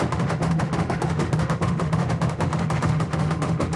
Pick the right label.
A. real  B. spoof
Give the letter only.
B